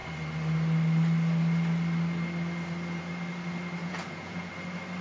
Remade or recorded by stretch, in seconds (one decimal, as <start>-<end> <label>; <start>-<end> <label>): 0.0-3.8 recorded; 3.8-4.5 remade; 4.5-5.0 recorded